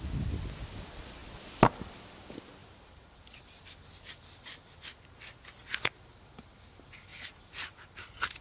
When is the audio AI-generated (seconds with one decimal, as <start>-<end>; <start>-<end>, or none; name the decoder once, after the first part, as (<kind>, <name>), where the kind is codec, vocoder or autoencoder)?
2.6-3.2 (vocoder, BigVGAN v2); 7.1-8.4